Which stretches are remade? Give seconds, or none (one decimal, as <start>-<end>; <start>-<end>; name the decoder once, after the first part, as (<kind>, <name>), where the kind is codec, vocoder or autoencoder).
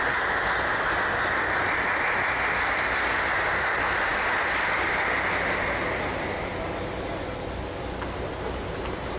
none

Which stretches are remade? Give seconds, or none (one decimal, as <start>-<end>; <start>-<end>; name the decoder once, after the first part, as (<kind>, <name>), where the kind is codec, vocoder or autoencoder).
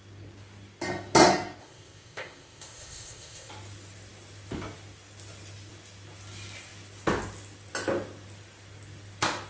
1.6-3.5 (codec, ZipCodec)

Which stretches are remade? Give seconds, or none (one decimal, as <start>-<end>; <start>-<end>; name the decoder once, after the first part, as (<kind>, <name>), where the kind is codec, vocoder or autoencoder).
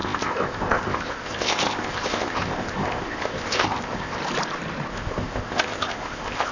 0.0-4.2 (codec, ZipCodec); 4.9-6.5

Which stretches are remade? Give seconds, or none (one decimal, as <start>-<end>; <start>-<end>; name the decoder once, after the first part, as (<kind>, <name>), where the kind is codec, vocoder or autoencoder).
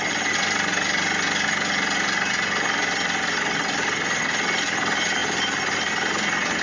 none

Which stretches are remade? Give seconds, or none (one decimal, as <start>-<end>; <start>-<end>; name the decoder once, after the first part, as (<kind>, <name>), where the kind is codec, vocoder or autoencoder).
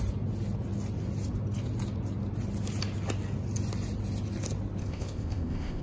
4.8-5.8 (codec, ZipCodec)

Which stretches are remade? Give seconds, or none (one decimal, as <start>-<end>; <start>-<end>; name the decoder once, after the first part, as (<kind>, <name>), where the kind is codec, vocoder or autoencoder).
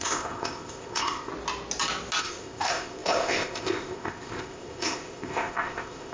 0.0-1.3 (codec, ZipCodec); 2.2-6.1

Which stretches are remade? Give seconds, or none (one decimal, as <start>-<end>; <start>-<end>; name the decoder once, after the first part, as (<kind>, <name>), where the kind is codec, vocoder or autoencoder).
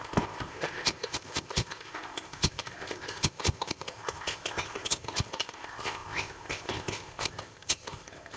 0.0-8.4 (codec, ZipCodec)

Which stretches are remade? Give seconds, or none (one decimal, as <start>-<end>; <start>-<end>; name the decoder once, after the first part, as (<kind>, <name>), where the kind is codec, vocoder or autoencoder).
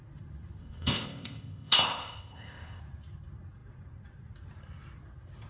0.6-2.8 (codec, ZipCodec)